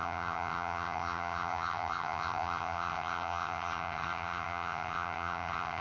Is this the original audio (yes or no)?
no